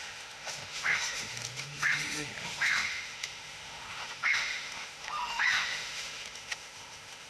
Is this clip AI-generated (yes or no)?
yes